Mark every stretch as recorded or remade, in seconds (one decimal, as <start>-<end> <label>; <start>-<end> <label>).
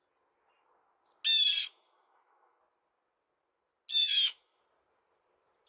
0.0-1.6 recorded; 1.6-2.6 remade; 2.6-4.0 recorded; 4.0-4.6 remade; 4.6-5.7 recorded